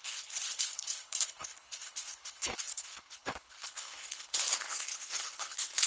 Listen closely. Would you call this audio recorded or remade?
remade